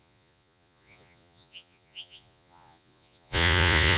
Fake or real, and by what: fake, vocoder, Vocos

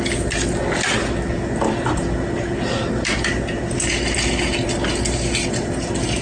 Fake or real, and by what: real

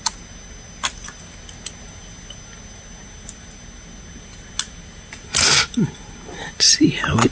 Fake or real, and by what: real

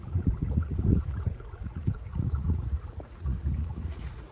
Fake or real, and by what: fake, vocoder, Vocos